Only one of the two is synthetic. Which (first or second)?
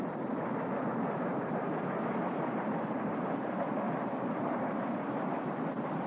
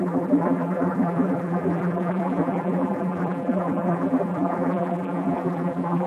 second